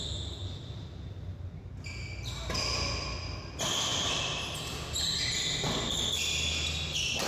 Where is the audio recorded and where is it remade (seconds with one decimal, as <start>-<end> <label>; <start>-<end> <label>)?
0.0-7.3 recorded